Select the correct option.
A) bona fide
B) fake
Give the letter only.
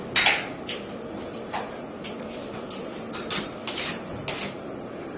A